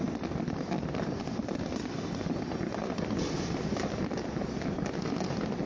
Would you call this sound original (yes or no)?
yes